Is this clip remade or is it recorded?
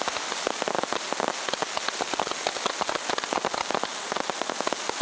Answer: recorded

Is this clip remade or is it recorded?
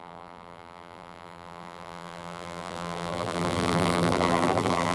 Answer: remade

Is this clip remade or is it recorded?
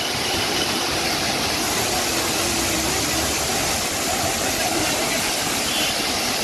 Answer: recorded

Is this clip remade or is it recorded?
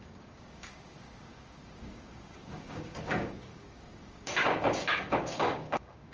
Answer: remade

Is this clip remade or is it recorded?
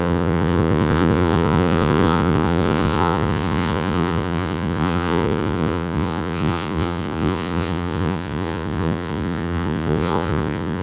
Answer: remade